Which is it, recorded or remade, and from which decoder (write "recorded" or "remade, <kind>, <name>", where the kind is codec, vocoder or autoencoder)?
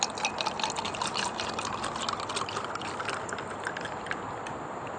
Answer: recorded